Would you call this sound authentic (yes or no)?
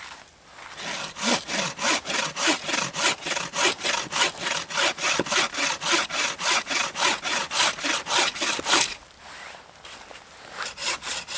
yes